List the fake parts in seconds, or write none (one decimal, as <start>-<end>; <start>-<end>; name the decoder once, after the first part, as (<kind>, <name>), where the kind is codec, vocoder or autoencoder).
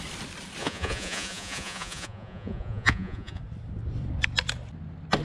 0.6-3.4 (vocoder, Vocos)